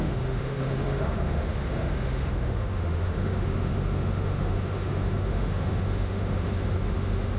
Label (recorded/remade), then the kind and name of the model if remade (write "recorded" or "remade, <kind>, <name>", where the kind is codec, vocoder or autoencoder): remade, autoencoder, DAC-VAE